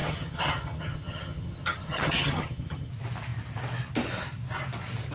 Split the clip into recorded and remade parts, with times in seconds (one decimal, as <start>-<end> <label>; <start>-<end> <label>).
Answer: 0.0-2.9 remade; 2.9-5.1 recorded